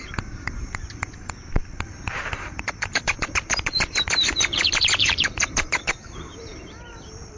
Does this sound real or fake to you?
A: fake